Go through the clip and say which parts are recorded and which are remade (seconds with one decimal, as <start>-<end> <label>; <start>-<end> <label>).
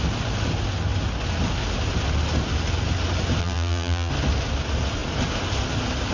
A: 0.0-3.4 recorded; 3.4-4.1 remade; 4.1-6.1 recorded